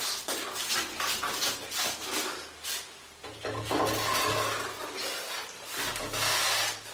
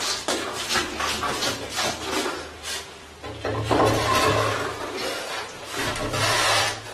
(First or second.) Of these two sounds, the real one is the first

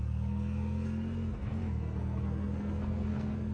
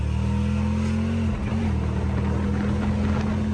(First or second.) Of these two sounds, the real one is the second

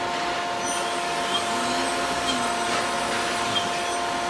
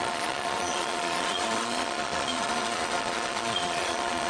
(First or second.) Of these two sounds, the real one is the first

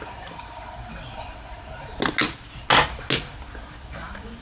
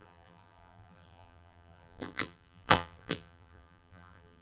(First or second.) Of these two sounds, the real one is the first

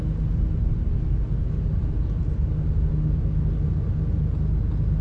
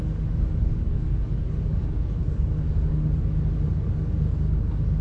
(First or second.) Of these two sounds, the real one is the first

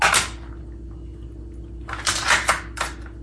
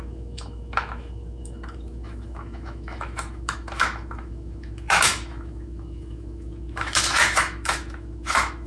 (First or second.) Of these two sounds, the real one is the first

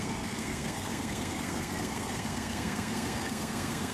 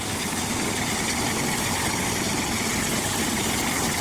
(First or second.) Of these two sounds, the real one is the second